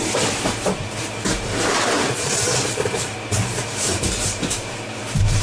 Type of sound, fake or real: fake